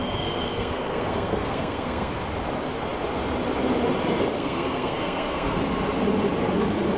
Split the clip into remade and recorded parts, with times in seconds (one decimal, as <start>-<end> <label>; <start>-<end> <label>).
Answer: 0.0-2.1 remade; 2.1-4.4 recorded; 4.4-5.6 remade; 5.6-7.0 recorded